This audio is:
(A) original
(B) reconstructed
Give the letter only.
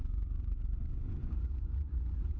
B